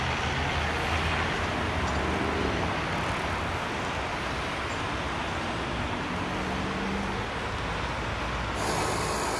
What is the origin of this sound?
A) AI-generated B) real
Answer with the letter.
B